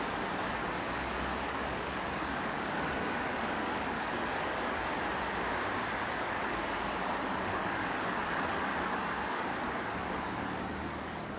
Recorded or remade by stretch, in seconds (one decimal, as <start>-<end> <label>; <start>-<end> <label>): 0.0-4.9 remade; 4.9-6.1 recorded; 6.1-11.4 remade